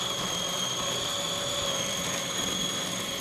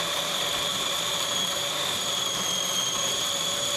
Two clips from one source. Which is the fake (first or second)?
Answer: second